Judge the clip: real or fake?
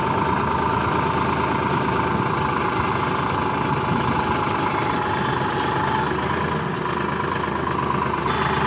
real